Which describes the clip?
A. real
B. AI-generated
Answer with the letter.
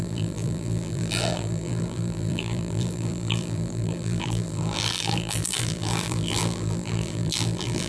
B